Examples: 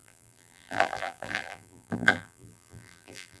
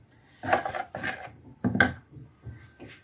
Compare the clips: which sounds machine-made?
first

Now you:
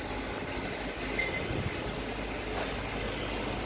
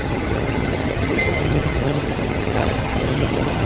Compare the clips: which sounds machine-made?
second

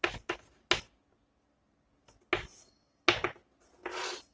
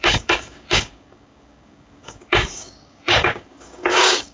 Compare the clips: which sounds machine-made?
second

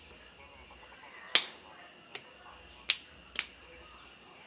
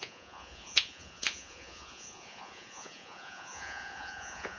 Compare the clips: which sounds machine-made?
second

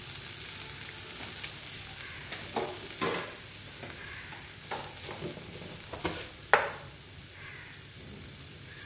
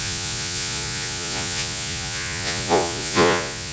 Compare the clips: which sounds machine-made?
second